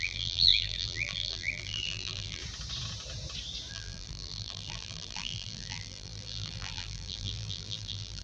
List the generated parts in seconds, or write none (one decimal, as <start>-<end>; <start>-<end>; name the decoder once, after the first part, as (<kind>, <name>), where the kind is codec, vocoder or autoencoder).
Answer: 0.0-2.4 (vocoder, BigVGAN v2); 3.7-8.2